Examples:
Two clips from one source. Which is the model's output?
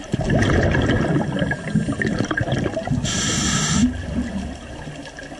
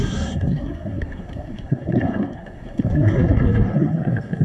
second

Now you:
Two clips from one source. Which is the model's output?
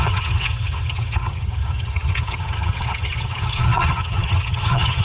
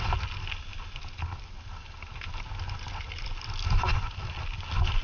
first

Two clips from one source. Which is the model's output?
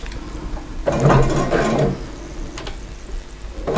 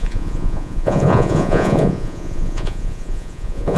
second